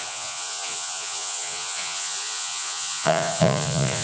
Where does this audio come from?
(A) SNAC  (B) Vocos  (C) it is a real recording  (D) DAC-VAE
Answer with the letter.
B